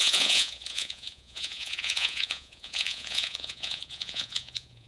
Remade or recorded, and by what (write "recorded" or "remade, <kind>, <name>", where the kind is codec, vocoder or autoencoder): remade, vocoder, Vocos